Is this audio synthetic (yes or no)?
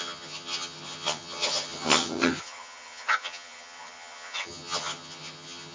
yes